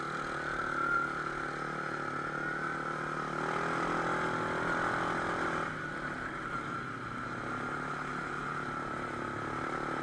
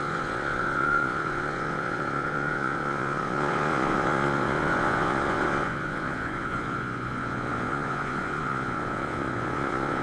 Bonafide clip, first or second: first